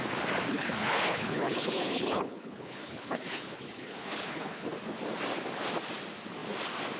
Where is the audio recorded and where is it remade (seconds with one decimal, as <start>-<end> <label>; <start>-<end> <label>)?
0.0-0.5 recorded; 0.5-4.7 remade; 4.7-7.0 recorded